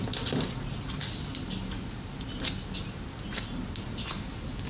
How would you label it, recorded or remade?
recorded